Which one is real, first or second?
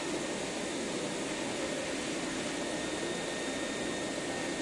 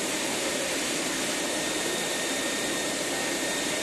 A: first